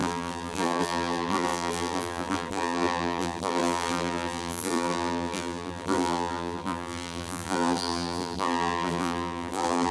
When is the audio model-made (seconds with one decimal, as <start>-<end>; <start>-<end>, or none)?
0.0-9.9